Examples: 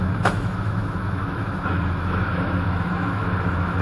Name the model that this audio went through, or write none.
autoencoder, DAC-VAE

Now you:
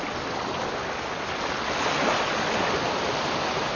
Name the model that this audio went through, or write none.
none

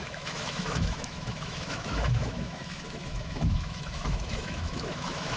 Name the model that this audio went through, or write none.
autoencoder, DAC-VAE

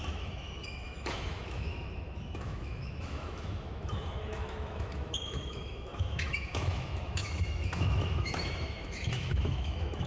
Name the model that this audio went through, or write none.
autoencoder, DAC-VAE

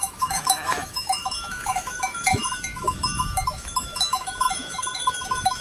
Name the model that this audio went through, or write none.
autoencoder, DAC-VAE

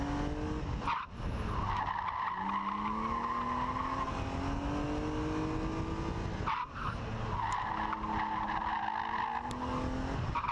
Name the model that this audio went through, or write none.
none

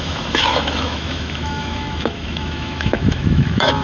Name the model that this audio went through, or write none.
autoencoder, DAC-VAE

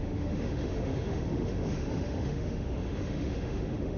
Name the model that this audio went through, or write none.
autoencoder, DAC-VAE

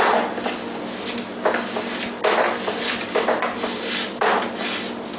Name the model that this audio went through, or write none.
none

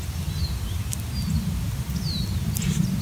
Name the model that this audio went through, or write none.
none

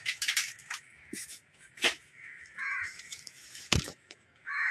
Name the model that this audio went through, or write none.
autoencoder, DAC-VAE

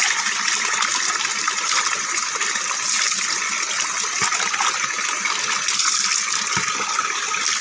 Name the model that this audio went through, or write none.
none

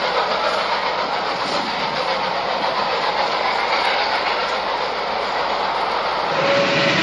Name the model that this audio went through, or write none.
none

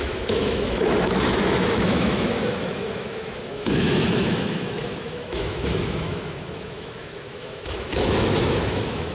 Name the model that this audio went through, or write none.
autoencoder, DAC-VAE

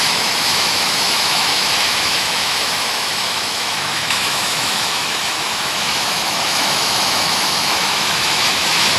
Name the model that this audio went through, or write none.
autoencoder, DAC-VAE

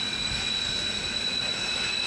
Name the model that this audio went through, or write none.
none